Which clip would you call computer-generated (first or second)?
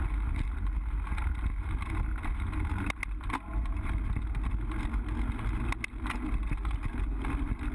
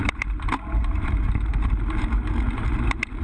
second